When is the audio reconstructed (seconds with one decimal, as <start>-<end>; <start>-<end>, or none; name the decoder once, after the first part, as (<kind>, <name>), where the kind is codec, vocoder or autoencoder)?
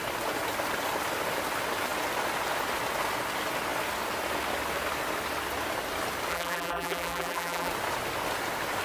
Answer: 6.3-7.7 (vocoder, BigVGAN v2)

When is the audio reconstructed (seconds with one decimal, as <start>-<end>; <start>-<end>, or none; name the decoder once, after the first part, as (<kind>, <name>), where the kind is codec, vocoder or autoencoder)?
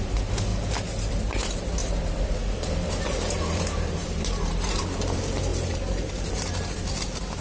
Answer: 1.8-4.8 (vocoder, BigVGAN v2); 5.5-6.3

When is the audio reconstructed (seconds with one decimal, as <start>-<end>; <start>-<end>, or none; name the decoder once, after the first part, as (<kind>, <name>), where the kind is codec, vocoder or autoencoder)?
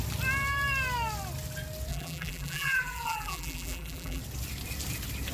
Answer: 1.9-4.2 (vocoder, BigVGAN v2)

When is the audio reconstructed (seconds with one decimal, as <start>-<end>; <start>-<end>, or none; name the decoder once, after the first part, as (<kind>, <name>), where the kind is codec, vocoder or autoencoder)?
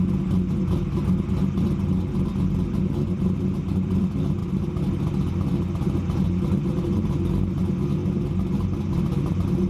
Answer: none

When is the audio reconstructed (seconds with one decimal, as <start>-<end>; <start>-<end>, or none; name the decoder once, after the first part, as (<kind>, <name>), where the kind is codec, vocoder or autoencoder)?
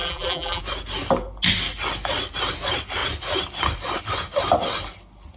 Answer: 0.0-0.6 (vocoder, BigVGAN v2)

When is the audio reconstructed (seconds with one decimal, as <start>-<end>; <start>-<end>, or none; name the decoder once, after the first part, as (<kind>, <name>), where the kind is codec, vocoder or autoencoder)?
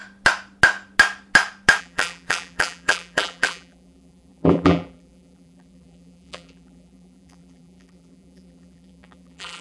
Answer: 1.8-9.6 (vocoder, BigVGAN v2)